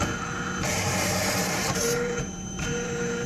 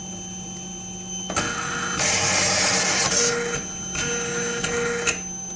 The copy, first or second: first